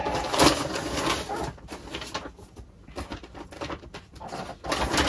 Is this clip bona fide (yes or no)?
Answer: yes